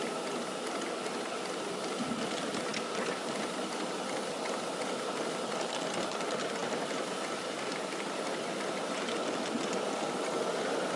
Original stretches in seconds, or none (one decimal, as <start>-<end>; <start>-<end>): 0.0-11.0